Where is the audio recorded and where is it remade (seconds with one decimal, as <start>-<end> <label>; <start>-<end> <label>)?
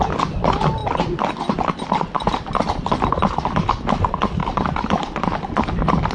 0.0-6.1 recorded